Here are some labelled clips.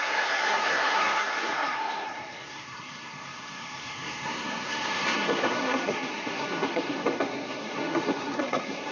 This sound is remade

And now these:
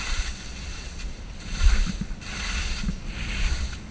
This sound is recorded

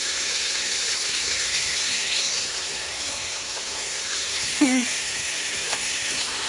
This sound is remade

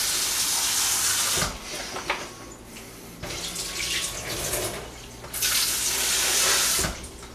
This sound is recorded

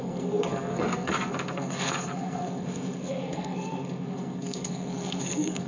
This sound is remade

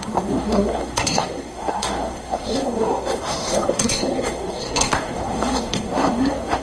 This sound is remade